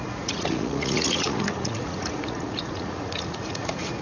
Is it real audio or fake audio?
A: fake